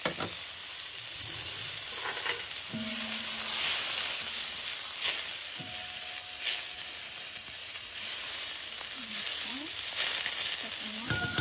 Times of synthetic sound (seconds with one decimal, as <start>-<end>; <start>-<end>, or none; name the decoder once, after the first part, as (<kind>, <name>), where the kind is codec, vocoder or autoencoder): 7.6-8.5 (vocoder, Vocos)